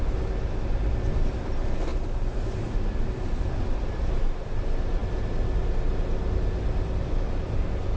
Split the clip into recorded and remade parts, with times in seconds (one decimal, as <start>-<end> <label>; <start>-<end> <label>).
0.0-8.0 recorded